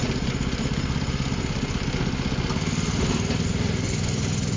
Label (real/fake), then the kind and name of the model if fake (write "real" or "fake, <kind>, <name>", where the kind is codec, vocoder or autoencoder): real